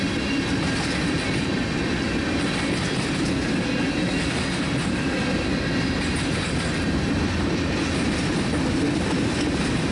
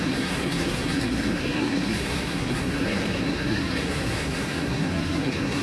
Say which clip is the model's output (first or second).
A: second